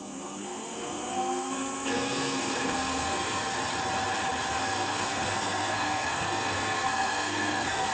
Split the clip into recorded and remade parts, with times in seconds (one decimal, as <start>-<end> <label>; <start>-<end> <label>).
0.0-3.5 remade; 3.5-4.5 recorded; 4.5-7.9 remade